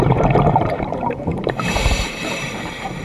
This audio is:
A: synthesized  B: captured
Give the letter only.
A